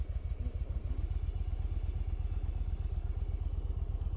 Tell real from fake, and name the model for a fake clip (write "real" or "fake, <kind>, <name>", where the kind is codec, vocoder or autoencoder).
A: real